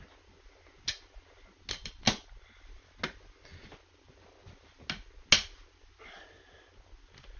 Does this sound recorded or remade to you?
recorded